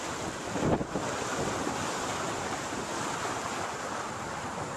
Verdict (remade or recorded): recorded